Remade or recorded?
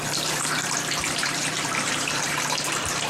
remade